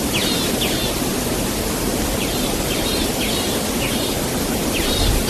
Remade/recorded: recorded